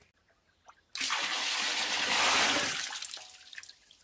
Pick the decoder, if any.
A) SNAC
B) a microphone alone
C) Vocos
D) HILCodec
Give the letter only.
B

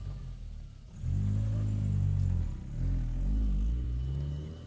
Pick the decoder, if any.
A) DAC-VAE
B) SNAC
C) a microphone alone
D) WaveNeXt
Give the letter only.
C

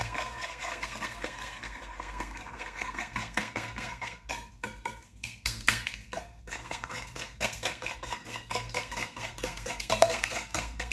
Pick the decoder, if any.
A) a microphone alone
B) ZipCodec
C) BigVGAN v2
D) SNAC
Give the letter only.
D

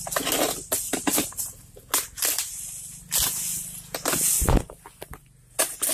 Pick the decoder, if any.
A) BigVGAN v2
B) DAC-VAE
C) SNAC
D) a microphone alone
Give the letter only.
D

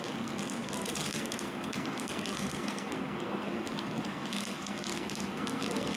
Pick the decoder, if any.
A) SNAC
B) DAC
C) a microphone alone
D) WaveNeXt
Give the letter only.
A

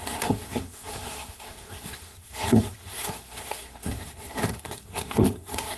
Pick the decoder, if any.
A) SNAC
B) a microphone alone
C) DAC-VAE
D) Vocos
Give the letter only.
A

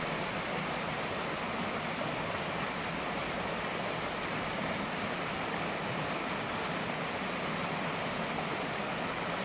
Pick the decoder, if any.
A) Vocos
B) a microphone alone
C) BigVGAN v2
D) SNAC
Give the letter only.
B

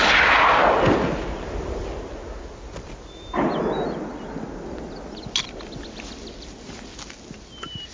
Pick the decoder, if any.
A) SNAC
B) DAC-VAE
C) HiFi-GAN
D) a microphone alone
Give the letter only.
D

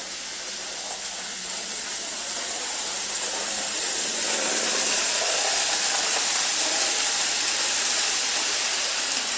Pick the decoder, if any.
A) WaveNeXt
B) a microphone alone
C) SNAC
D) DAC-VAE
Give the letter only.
B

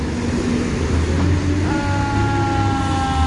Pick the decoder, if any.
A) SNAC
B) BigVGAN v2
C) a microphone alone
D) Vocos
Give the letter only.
C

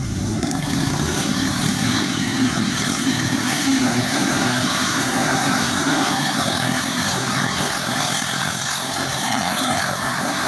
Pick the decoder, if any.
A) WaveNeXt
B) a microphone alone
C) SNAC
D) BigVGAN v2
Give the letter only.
C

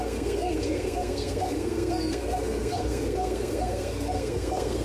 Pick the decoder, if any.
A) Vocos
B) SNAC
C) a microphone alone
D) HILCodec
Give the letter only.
B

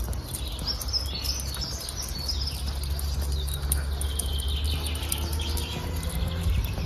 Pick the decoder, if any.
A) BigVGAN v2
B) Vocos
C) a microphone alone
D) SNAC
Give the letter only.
C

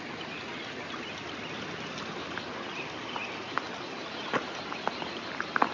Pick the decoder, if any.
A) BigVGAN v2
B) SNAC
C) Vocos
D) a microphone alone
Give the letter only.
D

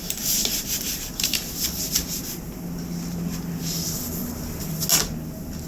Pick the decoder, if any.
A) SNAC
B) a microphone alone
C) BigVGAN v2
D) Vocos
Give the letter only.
B